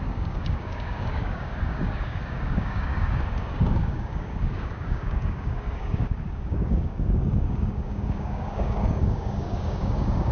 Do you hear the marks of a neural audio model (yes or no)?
yes